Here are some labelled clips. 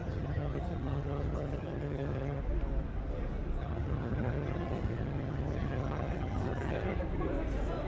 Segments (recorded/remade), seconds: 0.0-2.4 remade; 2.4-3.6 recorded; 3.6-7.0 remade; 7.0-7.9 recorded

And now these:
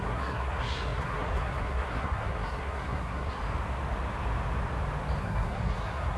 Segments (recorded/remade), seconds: 0.0-3.4 remade; 3.4-5.2 recorded; 5.2-6.2 remade

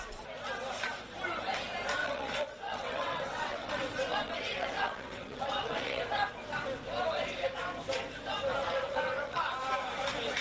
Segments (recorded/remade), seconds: 0.0-2.0 recorded; 2.0-6.0 remade; 6.0-8.6 recorded; 8.6-9.5 remade; 9.5-10.4 recorded

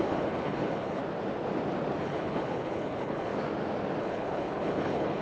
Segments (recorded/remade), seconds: 0.0-1.0 remade; 1.0-2.0 recorded; 2.0-3.3 remade; 3.3-4.0 recorded; 4.0-5.2 remade

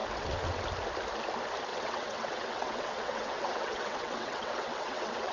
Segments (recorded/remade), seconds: 0.0-0.6 remade; 0.6-1.7 recorded; 1.7-5.3 remade

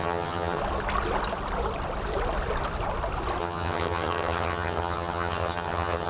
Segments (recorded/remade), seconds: 0.0-0.6 remade; 0.6-3.4 recorded; 3.4-6.1 remade

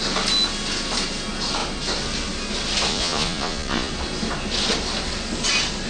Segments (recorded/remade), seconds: 0.0-2.9 recorded; 2.9-3.9 remade; 3.9-5.9 recorded

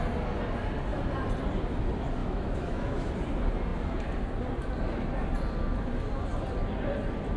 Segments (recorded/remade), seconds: 0.0-2.2 recorded; 2.2-3.1 remade; 3.1-7.4 recorded